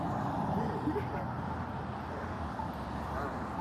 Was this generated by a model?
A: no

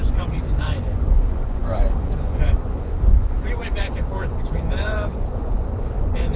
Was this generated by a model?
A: yes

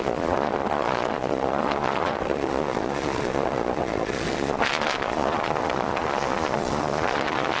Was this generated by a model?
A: yes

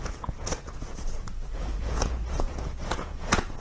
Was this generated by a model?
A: yes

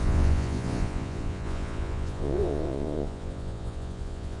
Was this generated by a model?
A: yes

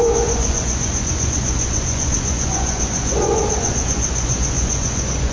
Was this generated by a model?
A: yes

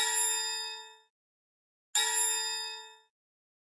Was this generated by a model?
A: no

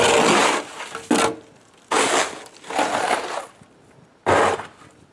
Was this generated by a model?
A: no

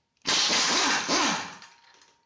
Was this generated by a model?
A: no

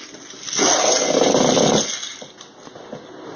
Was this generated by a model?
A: no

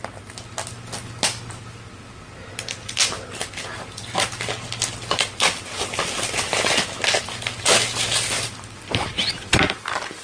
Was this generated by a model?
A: no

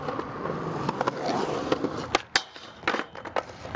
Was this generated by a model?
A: no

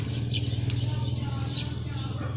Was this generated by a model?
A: no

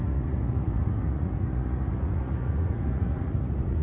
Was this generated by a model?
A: yes